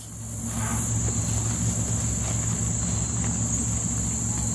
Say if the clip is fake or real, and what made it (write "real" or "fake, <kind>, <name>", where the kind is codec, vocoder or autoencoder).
real